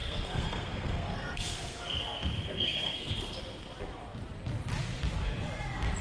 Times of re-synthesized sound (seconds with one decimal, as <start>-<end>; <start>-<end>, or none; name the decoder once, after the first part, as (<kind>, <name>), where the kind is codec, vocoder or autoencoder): 0.0-3.4 (codec, SNAC)